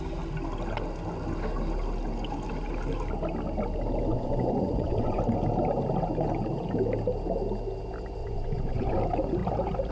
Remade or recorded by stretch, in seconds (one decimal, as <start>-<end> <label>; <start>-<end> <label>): 0.0-4.1 recorded; 4.1-5.2 remade; 5.2-8.2 recorded; 8.2-9.0 remade; 9.0-9.9 recorded

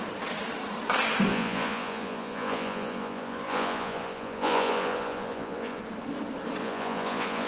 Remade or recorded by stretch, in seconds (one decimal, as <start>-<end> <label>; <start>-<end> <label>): 0.0-1.3 recorded; 1.3-5.8 remade; 5.8-6.6 recorded; 6.6-7.5 remade

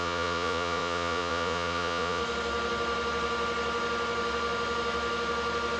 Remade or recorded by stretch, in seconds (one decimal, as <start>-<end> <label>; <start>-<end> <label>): 0.0-2.2 remade; 2.2-5.8 recorded

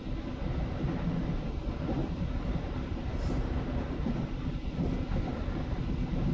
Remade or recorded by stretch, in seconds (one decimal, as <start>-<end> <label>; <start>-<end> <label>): 0.0-6.3 recorded

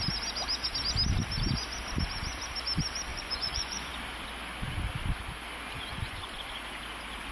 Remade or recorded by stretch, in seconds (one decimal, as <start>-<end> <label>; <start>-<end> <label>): 0.0-3.1 recorded; 3.1-3.9 remade; 3.9-5.9 recorded; 5.9-6.4 remade; 6.4-7.3 recorded